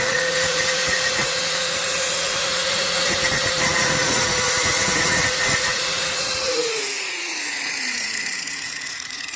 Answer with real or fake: fake